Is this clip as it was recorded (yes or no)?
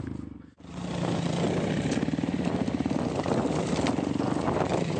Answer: yes